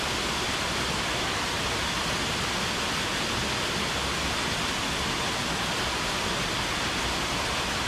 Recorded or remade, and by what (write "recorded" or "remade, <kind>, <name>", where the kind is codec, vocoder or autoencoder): recorded